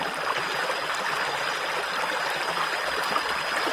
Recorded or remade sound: recorded